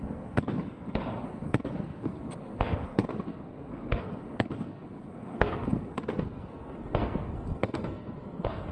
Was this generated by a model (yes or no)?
yes